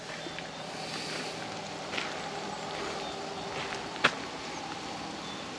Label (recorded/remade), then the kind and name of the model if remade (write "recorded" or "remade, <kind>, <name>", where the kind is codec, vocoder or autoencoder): recorded